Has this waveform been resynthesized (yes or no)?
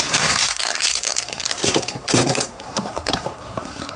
yes